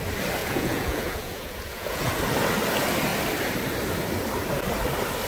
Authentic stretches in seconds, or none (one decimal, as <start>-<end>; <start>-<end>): 0.0-0.4; 2.1-5.3